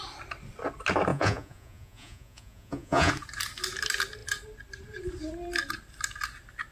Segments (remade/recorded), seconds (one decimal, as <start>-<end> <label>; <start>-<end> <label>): 0.0-1.1 recorded; 1.1-3.1 remade; 3.1-6.7 recorded